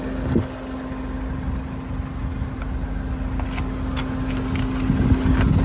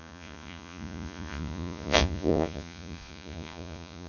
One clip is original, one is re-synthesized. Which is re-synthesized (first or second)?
second